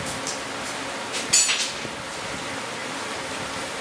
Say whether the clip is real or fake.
real